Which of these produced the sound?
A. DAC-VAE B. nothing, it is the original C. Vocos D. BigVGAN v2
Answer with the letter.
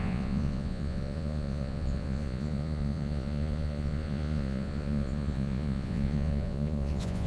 C